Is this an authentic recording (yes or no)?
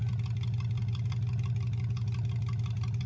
yes